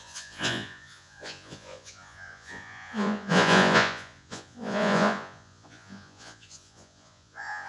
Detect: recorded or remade remade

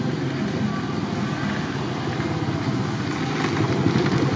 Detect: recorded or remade recorded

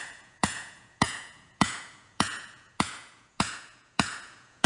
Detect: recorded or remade remade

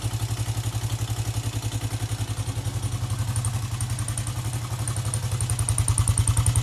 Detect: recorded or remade recorded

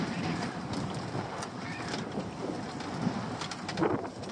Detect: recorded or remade recorded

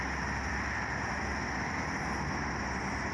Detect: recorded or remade recorded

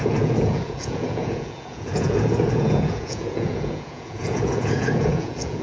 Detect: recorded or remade remade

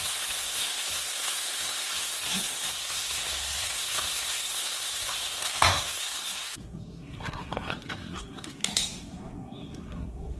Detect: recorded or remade remade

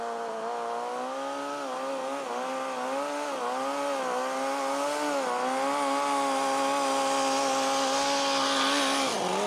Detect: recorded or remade recorded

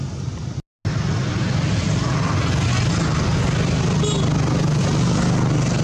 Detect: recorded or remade recorded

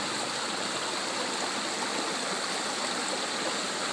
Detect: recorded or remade recorded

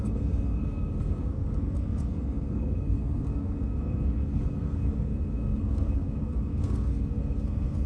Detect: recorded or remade remade